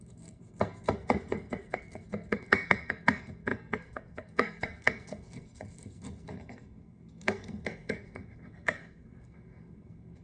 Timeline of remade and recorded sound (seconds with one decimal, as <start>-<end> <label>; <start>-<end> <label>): 0.0-10.2 remade